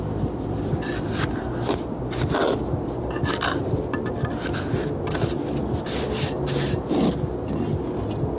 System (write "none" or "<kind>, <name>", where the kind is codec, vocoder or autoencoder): none